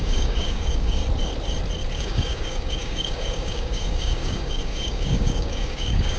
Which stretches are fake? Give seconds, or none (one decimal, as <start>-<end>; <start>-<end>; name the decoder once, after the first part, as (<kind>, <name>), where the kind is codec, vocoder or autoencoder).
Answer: 0.0-1.0 (codec, DAC); 1.9-6.2